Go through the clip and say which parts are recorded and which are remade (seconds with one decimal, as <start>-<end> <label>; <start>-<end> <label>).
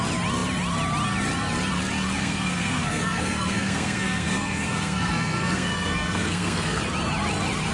0.0-2.2 recorded; 2.2-6.8 remade; 6.8-7.7 recorded